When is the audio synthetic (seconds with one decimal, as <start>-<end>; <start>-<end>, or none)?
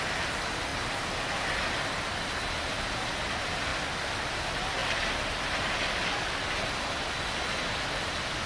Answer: 3.7-4.3; 4.8-5.7